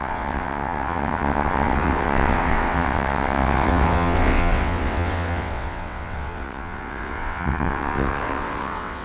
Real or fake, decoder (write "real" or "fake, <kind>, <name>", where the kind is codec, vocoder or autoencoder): fake, vocoder, WaveNeXt